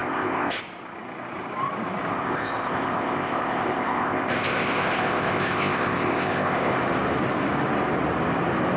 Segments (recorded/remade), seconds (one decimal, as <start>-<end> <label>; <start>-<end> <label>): 0.0-0.6 remade; 0.6-2.1 recorded; 2.1-6.7 remade; 6.7-8.8 recorded